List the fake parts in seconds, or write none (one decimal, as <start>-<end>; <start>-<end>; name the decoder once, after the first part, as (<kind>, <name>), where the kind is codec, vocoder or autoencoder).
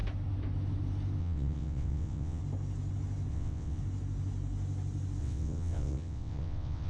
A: 1.2-2.4 (vocoder, WaveNeXt); 3.3-3.8; 5.2-6.9